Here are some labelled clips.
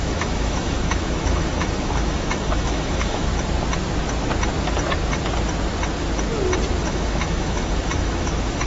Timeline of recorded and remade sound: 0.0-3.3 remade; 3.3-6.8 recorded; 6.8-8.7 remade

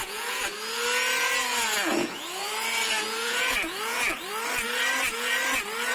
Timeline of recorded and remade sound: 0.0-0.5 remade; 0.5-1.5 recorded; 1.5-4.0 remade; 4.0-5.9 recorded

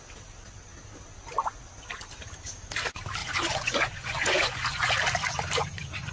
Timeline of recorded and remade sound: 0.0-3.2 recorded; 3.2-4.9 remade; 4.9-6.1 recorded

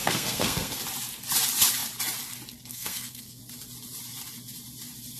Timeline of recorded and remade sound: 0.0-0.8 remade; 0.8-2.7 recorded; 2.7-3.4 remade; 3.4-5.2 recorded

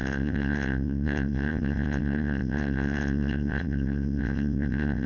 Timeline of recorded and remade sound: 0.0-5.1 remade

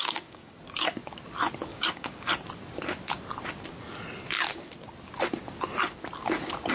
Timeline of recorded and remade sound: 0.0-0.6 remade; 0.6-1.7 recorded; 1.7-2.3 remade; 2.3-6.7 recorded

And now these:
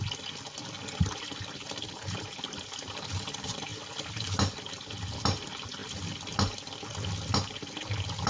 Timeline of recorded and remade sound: 0.0-8.3 recorded

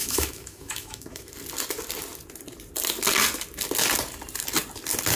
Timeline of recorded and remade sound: 0.0-1.3 remade; 1.3-5.1 recorded